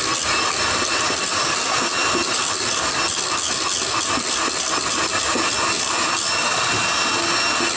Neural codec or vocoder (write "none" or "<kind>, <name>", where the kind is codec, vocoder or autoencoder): none